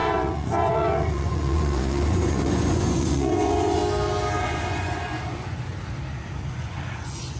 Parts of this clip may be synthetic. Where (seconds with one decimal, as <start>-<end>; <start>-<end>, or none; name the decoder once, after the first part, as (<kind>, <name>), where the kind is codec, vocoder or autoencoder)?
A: 0.0-3.8 (vocoder, Vocos); 4.4-5.7; 6.5-7.4